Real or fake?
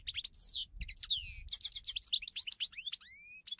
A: real